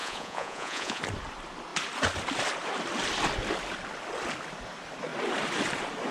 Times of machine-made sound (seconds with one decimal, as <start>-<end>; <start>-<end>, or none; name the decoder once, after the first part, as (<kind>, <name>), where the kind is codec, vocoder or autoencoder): 0.0-1.0 (vocoder, Vocos)